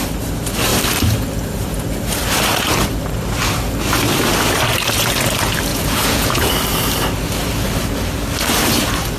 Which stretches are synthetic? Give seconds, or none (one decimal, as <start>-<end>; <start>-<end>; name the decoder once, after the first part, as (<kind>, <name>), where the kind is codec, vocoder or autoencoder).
5.7-6.5 (vocoder, Vocos)